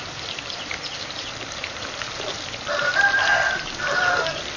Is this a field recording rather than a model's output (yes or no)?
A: no